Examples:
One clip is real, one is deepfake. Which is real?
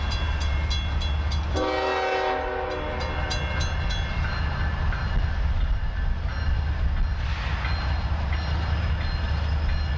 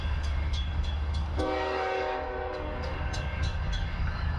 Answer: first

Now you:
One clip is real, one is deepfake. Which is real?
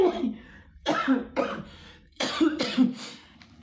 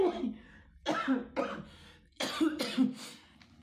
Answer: second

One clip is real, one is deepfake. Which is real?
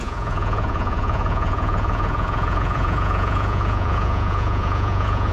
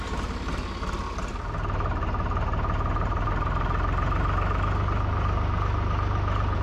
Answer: second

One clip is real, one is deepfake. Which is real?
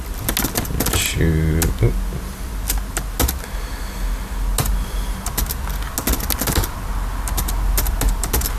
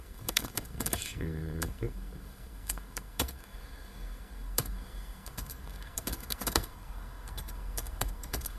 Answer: first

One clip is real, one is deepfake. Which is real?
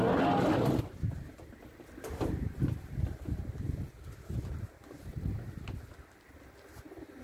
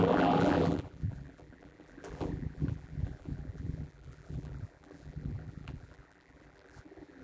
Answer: first